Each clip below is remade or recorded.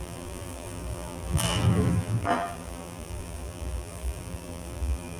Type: remade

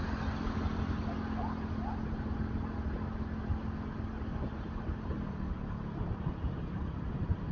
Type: recorded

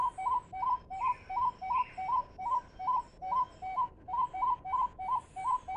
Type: recorded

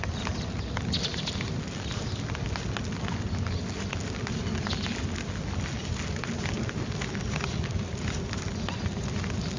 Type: recorded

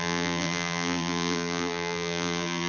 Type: remade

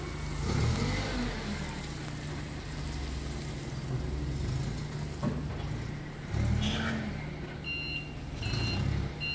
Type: recorded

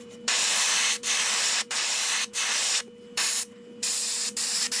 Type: remade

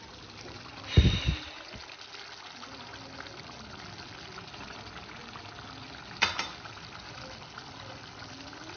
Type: recorded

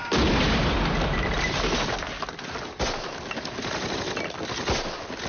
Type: recorded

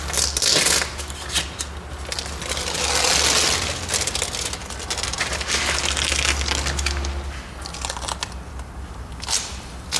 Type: recorded